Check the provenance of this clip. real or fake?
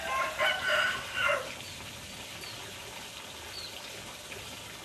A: real